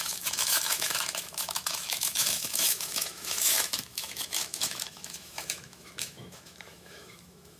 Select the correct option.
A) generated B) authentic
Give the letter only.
A